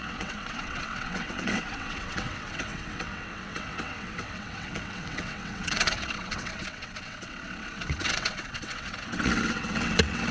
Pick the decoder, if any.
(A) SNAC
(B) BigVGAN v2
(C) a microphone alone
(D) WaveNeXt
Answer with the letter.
D